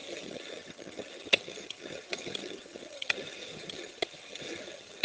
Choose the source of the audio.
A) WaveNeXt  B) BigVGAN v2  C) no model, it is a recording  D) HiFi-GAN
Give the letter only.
D